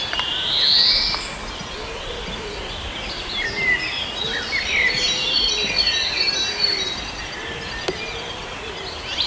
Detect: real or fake real